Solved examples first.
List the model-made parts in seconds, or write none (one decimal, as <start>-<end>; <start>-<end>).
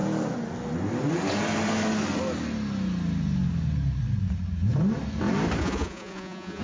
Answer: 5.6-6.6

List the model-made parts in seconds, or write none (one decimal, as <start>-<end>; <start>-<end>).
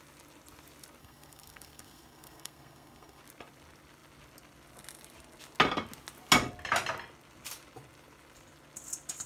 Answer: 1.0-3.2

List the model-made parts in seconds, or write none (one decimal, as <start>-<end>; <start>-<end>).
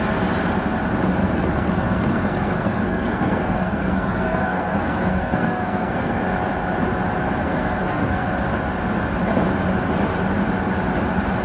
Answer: 1.2-6.2; 7.4-8.3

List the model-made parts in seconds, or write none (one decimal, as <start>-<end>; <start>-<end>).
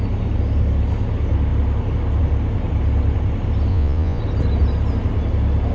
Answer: 3.7-4.2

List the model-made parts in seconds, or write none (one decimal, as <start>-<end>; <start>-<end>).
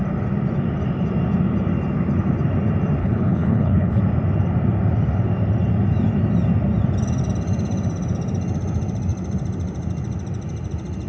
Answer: 3.0-4.0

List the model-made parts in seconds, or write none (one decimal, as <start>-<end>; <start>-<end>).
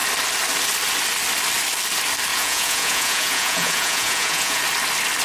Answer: 2.3-4.6